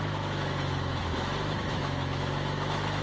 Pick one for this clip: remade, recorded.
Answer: remade